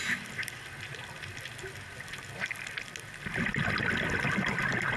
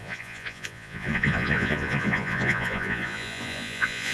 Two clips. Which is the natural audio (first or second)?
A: first